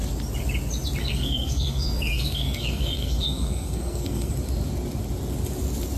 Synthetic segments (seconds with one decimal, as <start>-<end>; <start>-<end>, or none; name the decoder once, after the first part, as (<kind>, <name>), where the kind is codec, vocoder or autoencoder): 1.0-4.3 (codec, SNAC)